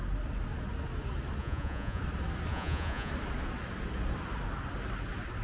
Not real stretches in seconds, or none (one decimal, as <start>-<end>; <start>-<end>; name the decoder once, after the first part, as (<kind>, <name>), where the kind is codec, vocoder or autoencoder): 1.4-2.0 (vocoder, Vocos); 2.5-3.1